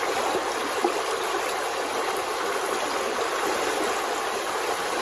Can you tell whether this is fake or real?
real